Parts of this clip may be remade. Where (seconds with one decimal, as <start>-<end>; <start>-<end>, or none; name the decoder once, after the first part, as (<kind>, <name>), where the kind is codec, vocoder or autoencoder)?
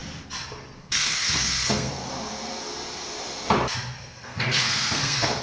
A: 0.8-2.1 (codec, SNAC); 4.1-5.4